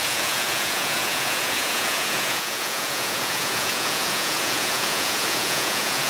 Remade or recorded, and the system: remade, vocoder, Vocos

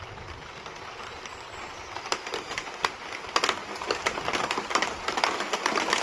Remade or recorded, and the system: recorded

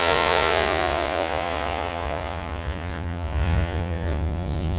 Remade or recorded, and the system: remade, vocoder, Vocos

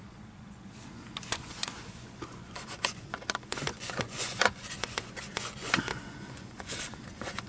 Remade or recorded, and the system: remade, vocoder, Vocos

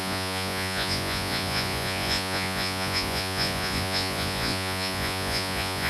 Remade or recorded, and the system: remade, vocoder, Vocos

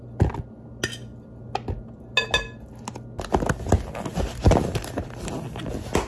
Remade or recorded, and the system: recorded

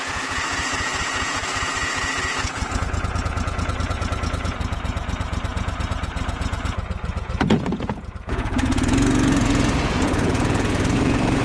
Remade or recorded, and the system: remade, vocoder, Vocos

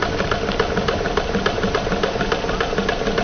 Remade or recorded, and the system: recorded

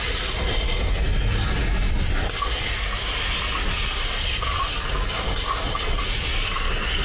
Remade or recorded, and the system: recorded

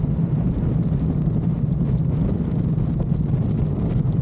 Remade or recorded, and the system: recorded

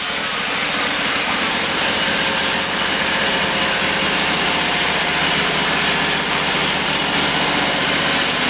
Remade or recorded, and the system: recorded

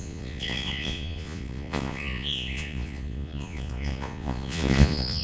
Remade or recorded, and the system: remade, vocoder, Vocos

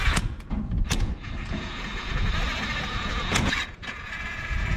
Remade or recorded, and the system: remade, vocoder, Vocos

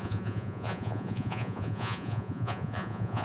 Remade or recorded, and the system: remade, vocoder, Vocos